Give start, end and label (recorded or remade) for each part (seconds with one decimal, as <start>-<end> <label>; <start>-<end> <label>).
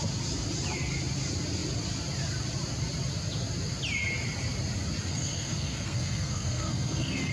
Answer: 0.0-5.1 recorded; 5.1-7.3 remade